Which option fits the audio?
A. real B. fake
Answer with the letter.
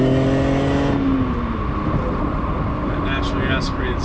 A